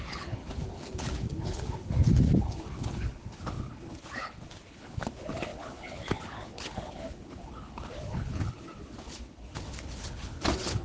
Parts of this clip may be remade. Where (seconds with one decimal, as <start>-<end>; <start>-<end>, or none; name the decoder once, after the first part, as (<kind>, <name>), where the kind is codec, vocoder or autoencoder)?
0.0-10.8 (codec, HILCodec)